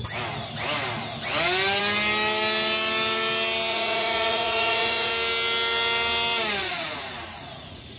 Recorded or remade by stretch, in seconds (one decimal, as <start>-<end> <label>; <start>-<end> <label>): 0.0-3.7 recorded; 3.7-5.1 remade; 5.1-6.6 recorded; 6.6-8.0 remade